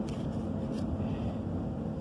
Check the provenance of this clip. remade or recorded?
recorded